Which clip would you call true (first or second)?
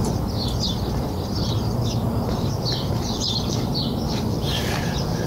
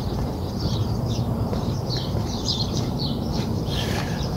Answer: first